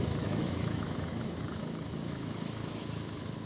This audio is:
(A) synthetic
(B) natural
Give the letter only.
A